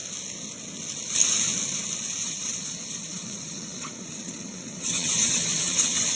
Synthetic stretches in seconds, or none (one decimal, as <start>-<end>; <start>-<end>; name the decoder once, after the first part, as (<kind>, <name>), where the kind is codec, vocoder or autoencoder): 2.2-6.2 (vocoder, WaveNeXt)